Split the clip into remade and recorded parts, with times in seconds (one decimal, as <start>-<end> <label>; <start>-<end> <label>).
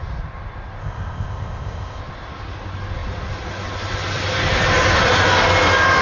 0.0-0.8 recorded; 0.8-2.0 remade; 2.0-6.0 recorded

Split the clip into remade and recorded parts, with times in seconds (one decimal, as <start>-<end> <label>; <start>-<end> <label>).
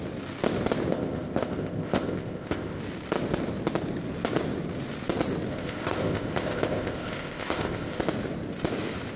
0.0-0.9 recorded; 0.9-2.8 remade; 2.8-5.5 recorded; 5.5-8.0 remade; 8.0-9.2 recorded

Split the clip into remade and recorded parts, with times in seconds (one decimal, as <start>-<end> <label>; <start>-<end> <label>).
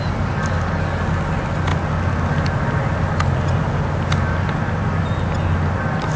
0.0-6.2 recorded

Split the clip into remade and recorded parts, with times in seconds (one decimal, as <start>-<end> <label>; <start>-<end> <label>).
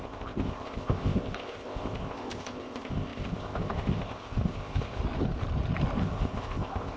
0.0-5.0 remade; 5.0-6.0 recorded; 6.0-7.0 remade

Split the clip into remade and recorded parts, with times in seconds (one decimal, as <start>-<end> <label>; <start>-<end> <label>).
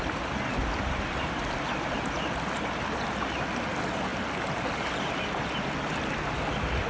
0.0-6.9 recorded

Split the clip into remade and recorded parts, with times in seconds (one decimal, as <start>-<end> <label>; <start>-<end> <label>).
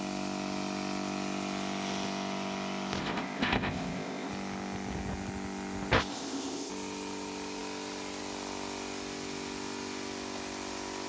0.0-3.0 recorded; 3.0-4.3 remade; 4.3-6.1 recorded; 6.1-6.7 remade; 6.7-11.1 recorded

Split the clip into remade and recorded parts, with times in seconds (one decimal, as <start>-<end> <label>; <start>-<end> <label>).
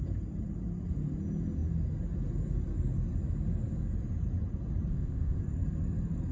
0.0-4.9 recorded; 4.9-5.4 remade; 5.4-6.3 recorded